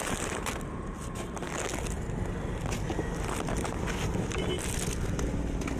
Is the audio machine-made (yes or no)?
no